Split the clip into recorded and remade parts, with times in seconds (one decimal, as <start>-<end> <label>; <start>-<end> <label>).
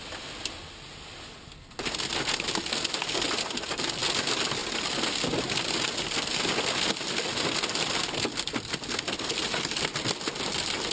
0.0-10.9 recorded